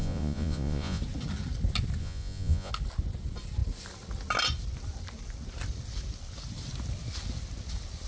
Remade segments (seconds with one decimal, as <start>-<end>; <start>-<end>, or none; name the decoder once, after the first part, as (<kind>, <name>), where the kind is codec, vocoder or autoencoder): 0.0-1.0 (vocoder, Vocos); 2.0-2.7